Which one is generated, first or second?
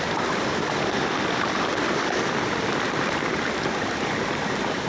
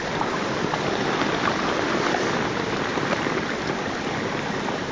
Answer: second